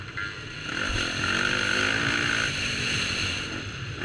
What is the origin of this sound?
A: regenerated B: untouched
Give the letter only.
B